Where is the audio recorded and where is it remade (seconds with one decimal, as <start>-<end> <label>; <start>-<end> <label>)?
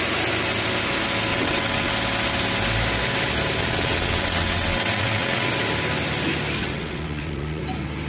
0.0-1.3 recorded; 1.3-1.9 remade; 1.9-3.6 recorded; 3.6-5.5 remade; 5.5-6.6 recorded; 6.6-7.6 remade; 7.6-8.1 recorded